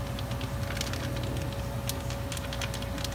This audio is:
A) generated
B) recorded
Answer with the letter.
B